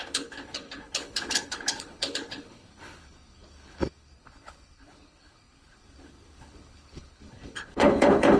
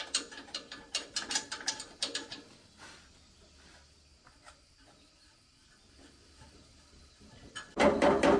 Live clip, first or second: second